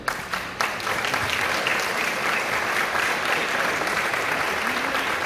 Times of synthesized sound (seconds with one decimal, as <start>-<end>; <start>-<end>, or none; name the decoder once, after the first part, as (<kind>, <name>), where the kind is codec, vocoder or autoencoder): none